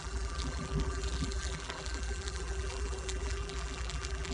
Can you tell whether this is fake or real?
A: fake